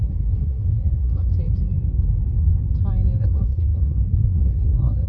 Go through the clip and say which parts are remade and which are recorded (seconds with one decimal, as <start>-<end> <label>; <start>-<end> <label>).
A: 0.0-1.3 remade; 1.3-3.2 recorded; 3.2-5.1 remade